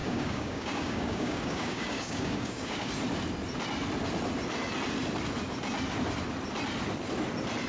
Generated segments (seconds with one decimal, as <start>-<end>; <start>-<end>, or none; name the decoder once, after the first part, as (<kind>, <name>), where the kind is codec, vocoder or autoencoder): 0.0-2.9 (codec, DAC)